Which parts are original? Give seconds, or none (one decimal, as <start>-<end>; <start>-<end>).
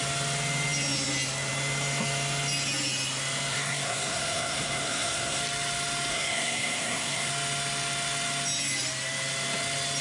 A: 0.0-3.5; 5.4-6.1; 7.3-10.0